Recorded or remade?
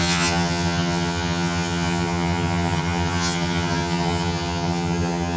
remade